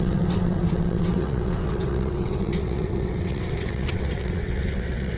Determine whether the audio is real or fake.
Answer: fake